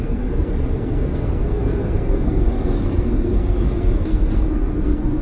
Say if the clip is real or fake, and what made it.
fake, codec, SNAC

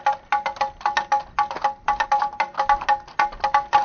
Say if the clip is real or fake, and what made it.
real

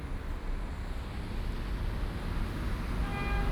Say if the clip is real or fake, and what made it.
real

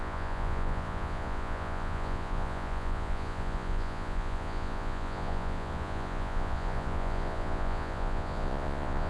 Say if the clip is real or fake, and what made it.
fake, vocoder, Vocos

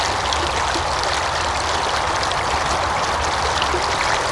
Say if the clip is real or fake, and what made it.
real